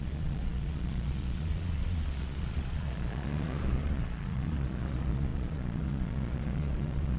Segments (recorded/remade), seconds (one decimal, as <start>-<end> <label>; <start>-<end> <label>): 0.0-7.2 remade